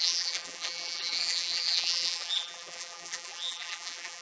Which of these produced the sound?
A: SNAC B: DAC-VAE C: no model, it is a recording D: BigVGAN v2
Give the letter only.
D